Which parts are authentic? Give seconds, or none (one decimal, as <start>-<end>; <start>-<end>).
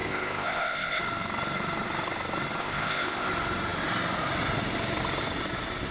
1.0-2.6; 3.3-5.9